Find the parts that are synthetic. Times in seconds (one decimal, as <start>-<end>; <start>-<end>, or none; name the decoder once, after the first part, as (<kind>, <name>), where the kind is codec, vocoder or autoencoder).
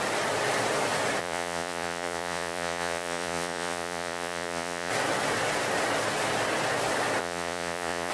1.2-4.9 (vocoder, Vocos); 7.2-8.1